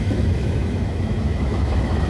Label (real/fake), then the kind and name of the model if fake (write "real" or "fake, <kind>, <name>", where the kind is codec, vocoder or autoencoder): fake, autoencoder, DAC-VAE